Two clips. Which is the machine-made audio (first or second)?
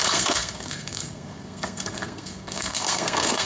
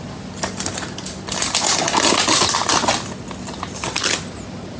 first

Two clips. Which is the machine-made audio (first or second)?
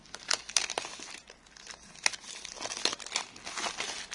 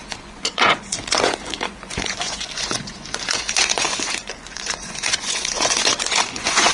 second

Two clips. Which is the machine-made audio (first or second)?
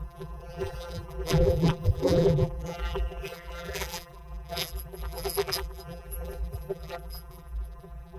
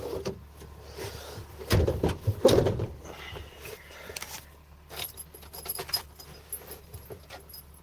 first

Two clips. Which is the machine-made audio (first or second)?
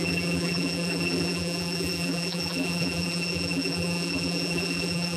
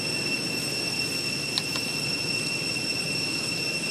first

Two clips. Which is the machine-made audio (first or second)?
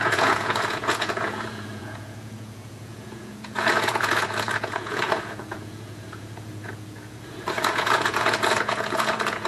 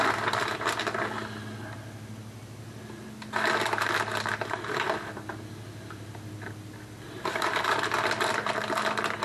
first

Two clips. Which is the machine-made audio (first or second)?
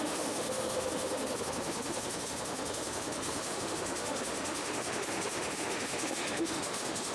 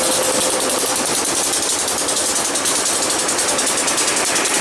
first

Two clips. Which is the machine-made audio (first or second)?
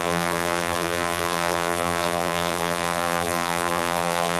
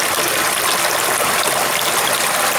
first